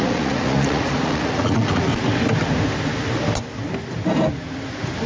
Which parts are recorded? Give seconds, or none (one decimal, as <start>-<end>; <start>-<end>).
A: 1.9-5.1